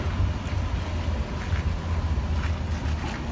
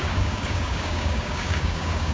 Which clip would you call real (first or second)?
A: first